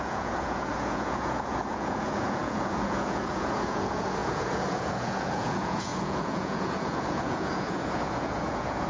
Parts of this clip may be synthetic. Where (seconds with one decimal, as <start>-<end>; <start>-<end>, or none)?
0.0-8.9